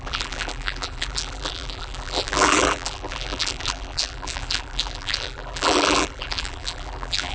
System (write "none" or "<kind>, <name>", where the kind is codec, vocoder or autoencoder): vocoder, BigVGAN v2